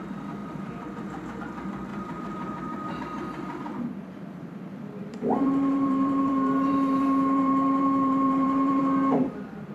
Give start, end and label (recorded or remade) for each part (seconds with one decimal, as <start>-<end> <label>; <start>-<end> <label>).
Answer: 0.0-0.4 recorded; 0.4-1.4 remade; 1.4-1.9 recorded; 1.9-3.0 remade; 3.0-5.0 recorded; 5.0-8.8 remade; 8.8-9.7 recorded